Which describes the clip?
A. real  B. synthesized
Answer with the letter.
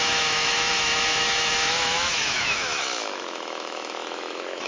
B